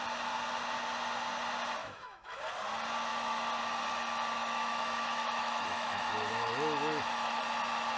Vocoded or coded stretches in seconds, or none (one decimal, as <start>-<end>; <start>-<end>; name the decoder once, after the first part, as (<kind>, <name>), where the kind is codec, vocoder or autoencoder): 1.8-2.4 (autoencoder, DAC-VAE); 4.4-7.4